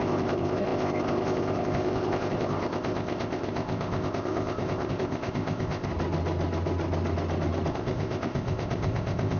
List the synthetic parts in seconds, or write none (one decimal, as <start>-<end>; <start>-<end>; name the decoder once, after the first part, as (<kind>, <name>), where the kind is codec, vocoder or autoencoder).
0.0-5.9 (codec, ZipCodec); 7.7-9.4